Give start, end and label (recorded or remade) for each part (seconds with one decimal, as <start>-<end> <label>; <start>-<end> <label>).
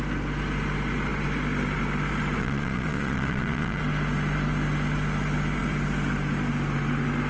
0.0-2.4 recorded; 2.4-3.8 remade; 3.8-7.3 recorded